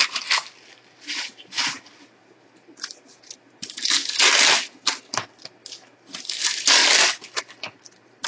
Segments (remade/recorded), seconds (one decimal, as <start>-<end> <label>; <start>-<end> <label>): 0.0-8.3 recorded